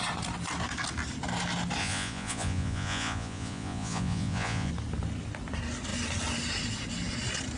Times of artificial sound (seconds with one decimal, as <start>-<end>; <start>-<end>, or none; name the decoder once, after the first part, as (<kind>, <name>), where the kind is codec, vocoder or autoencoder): 1.8-4.7 (vocoder, Vocos)